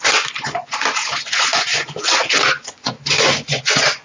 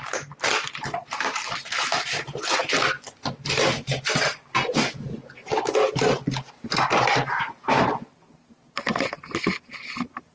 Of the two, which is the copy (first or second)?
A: first